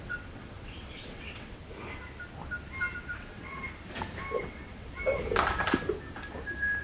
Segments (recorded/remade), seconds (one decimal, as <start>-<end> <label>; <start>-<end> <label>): 0.0-1.6 remade; 1.6-3.2 recorded; 3.2-3.6 remade; 3.6-4.4 recorded; 4.4-4.9 remade; 4.9-6.8 recorded